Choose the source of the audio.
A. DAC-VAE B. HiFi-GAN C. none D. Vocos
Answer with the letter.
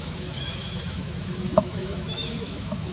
A